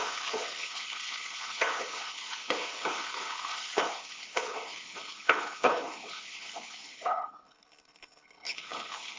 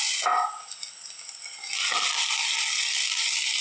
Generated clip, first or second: first